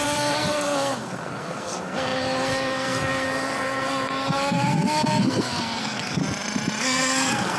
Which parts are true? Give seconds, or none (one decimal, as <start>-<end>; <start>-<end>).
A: 6.2-6.8